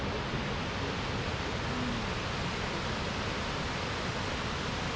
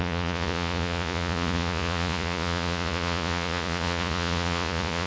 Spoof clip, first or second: second